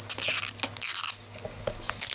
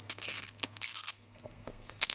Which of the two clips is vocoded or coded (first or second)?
second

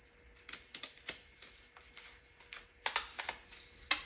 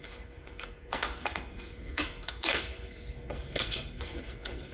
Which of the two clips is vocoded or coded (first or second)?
second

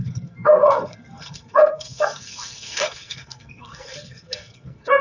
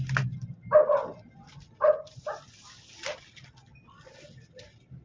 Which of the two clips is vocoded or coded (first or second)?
first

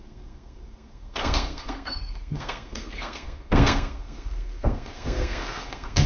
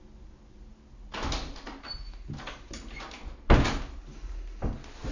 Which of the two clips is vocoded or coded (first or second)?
first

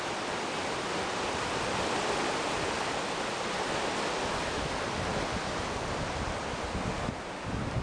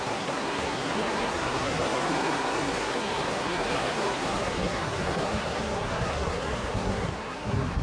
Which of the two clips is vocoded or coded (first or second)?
second